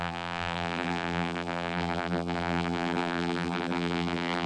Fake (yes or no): yes